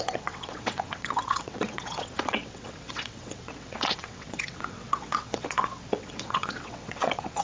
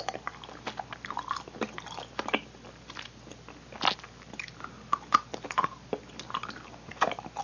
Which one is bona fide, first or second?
second